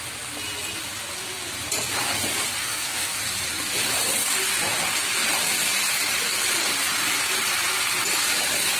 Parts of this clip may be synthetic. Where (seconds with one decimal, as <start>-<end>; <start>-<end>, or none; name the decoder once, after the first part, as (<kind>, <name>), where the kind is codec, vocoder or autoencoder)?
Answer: 2.6-3.2 (codec, SNAC)